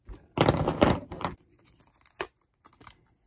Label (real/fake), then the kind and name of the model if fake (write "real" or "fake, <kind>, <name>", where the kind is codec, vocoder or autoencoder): real